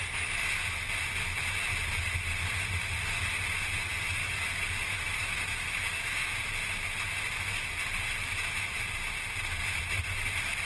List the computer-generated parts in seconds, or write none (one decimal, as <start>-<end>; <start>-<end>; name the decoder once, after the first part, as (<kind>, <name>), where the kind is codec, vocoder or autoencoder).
4.2-6.1 (autoencoder, DAC-VAE)